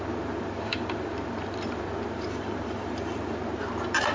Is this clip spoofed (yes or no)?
yes